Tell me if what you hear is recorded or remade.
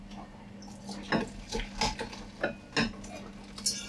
recorded